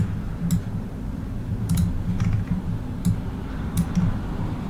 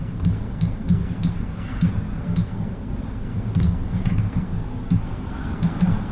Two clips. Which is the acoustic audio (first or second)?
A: first